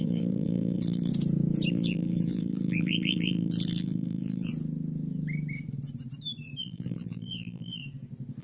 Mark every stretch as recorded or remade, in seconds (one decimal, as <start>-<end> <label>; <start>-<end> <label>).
0.0-1.1 remade; 1.1-1.7 recorded; 1.7-4.5 remade; 4.5-6.6 recorded; 6.6-7.8 remade; 7.8-8.4 recorded